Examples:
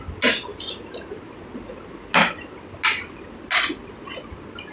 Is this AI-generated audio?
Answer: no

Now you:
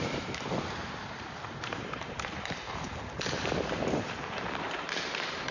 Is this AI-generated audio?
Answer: yes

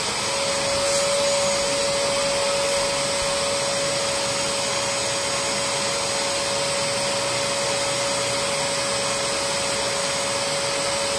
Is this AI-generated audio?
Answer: no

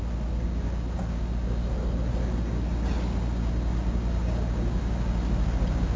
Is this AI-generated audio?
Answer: no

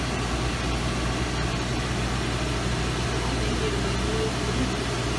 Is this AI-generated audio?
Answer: no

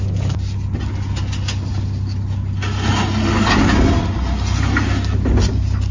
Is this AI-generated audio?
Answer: no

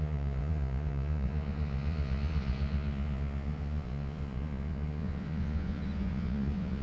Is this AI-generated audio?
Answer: yes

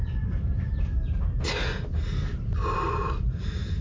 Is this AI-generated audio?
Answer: no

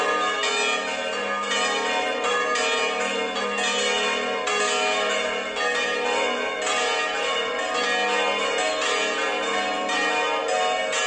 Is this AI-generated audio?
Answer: no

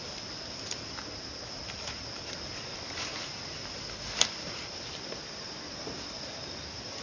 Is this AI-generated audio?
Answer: no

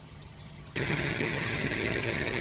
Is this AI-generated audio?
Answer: yes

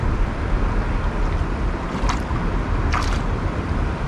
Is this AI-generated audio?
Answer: no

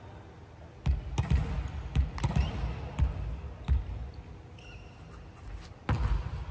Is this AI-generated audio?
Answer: no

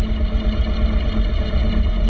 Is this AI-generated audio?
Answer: no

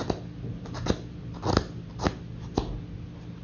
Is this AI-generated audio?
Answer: no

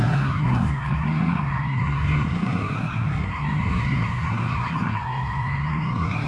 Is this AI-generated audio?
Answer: yes